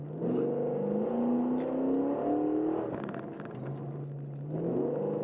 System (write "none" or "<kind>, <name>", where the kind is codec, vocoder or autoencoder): none